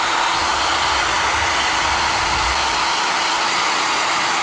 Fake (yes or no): no